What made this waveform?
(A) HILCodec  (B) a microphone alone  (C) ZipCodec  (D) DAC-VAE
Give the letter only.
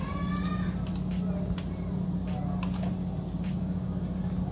B